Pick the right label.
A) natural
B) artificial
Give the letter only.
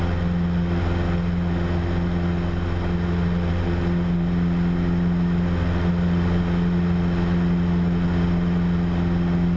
A